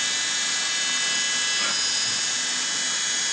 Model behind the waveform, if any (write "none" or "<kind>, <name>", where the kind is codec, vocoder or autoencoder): none